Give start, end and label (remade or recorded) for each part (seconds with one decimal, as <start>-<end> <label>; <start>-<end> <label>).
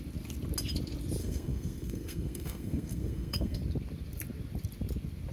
0.0-1.2 recorded; 1.2-3.6 remade; 3.6-5.3 recorded